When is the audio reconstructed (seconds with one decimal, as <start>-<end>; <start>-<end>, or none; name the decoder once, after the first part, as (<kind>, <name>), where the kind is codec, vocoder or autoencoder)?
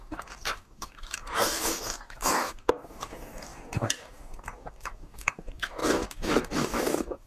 0.0-7.3 (codec, DAC)